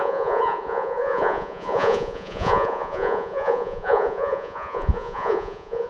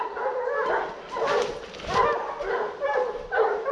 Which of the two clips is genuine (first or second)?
second